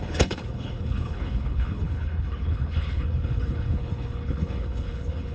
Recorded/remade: remade